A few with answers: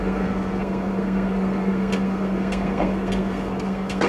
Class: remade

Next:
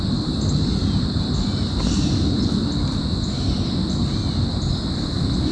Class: recorded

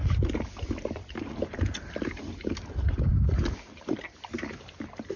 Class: recorded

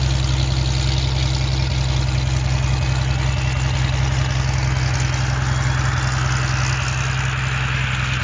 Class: recorded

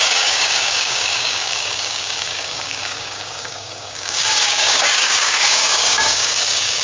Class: remade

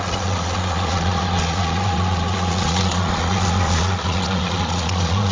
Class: remade